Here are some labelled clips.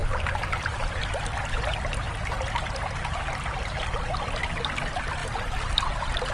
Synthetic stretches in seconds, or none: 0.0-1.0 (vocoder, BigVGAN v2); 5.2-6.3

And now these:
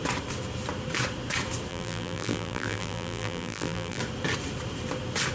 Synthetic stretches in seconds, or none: 1.7-4.0 (vocoder, BigVGAN v2)